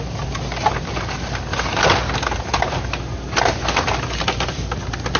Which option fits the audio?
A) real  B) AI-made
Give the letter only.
A